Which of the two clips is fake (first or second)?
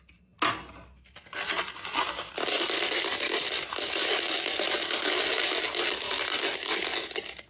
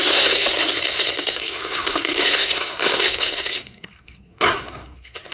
second